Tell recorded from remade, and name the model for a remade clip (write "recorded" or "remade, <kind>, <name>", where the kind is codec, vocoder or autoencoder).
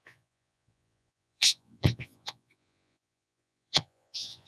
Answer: remade, vocoder, Vocos